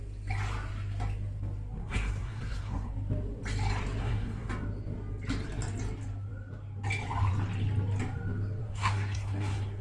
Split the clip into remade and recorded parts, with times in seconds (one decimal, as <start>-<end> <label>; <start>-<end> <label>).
0.0-1.8 recorded; 1.8-2.9 remade; 2.9-4.0 recorded; 4.0-4.5 remade; 4.5-8.6 recorded; 8.6-9.8 remade